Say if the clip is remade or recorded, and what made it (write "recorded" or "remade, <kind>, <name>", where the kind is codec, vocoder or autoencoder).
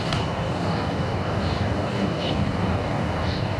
remade, codec, DAC